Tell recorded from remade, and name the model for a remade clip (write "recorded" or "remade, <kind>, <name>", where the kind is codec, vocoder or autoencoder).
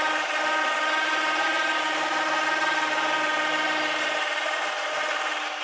recorded